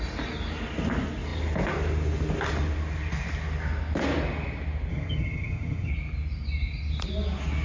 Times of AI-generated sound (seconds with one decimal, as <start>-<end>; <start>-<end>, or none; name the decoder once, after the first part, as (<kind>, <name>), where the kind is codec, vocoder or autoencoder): 4.9-5.9 (vocoder, HiFi-GAN)